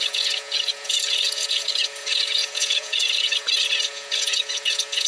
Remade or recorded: remade